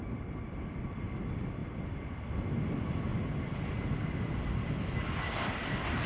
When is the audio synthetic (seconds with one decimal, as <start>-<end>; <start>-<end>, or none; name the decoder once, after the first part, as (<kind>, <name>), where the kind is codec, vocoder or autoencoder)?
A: none